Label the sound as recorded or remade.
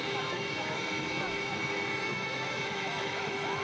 remade